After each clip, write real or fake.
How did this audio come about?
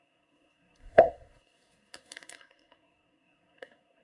fake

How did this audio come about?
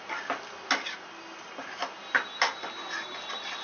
real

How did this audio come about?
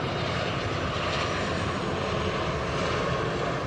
real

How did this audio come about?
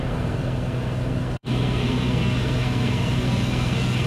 fake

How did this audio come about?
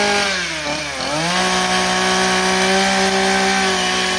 real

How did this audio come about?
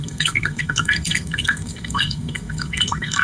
fake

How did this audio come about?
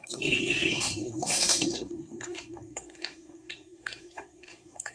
fake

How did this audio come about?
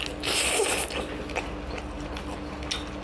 real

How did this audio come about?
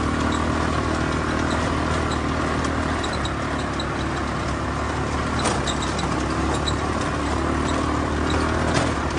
real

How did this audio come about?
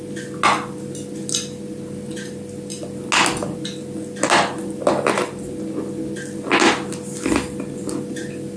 real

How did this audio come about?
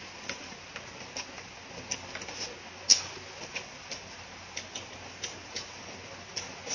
real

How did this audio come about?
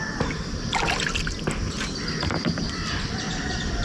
real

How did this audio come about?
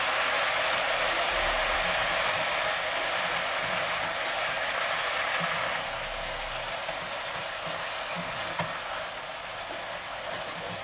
real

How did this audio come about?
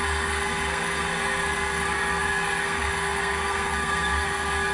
fake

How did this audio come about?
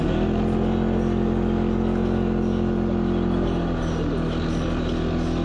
real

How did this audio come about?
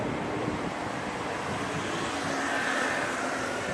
real